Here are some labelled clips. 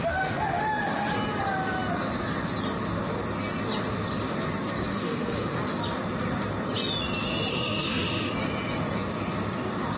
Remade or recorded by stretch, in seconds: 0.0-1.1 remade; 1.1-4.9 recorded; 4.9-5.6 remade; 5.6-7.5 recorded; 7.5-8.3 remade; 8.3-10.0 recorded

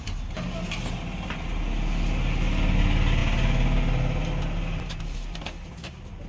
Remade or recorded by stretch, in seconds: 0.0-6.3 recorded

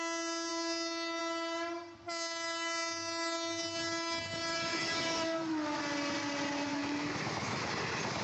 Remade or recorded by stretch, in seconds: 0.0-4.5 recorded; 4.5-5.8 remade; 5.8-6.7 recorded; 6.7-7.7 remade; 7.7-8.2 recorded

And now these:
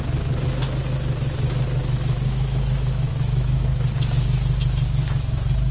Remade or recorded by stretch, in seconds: 0.0-1.8 recorded; 1.8-3.9 remade; 3.9-5.7 recorded

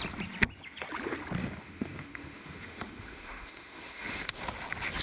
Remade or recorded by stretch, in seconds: 0.0-1.4 recorded; 1.4-4.4 remade; 4.4-5.0 recorded

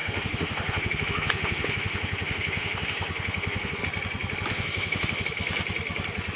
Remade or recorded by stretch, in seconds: 0.0-3.8 remade; 3.8-4.5 recorded; 4.5-5.2 remade; 5.2-6.4 recorded

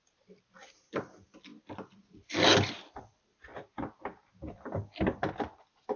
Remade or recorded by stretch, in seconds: 0.0-6.0 recorded

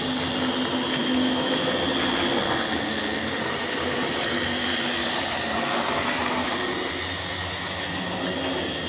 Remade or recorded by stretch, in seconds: 0.0-1.0 recorded; 1.0-1.7 remade; 1.7-8.9 recorded